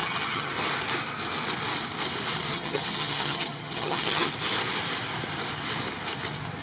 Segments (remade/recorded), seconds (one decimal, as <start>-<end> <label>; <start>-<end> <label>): 0.0-0.5 remade; 0.5-2.5 recorded; 2.5-4.3 remade; 4.3-6.6 recorded